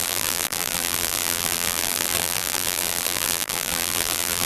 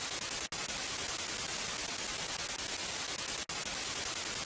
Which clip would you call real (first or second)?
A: second